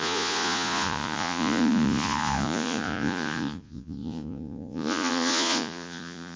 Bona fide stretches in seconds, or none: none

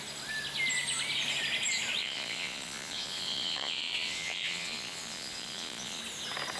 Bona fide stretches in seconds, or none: 0.0-2.0; 6.0-6.6